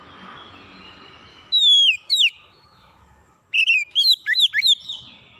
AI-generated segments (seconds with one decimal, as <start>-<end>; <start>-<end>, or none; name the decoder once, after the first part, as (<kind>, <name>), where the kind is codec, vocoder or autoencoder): 1.3-4.5 (autoencoder, DAC-VAE)

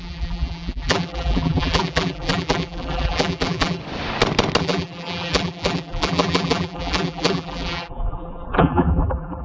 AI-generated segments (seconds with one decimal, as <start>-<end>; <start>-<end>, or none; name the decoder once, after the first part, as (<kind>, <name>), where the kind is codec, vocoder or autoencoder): 0.0-3.8 (vocoder, BigVGAN v2); 4.6-9.4

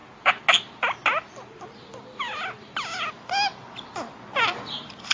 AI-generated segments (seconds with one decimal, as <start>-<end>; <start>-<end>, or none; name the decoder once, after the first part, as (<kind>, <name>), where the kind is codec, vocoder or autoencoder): 4.4-5.1 (vocoder, BigVGAN v2)

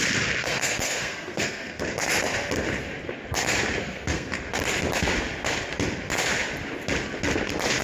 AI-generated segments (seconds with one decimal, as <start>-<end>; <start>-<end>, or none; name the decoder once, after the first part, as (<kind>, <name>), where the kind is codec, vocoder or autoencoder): 0.4-1.8 (codec, SNAC); 3.8-4.3

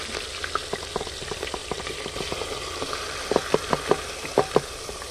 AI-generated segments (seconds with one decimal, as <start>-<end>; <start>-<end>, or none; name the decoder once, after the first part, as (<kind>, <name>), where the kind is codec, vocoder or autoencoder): 1.6-5.1 (vocoder, BigVGAN v2)